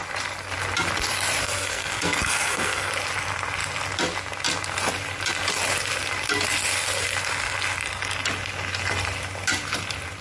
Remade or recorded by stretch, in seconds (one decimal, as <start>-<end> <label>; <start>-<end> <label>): 0.0-1.4 recorded; 1.4-2.9 remade; 2.9-10.2 recorded